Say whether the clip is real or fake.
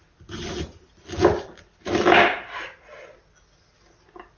real